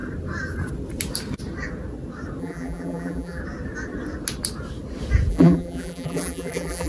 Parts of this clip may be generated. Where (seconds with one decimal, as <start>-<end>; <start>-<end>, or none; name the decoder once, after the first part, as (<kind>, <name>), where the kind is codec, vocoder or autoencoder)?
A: 2.4-3.4 (vocoder, BigVGAN v2); 5.3-6.9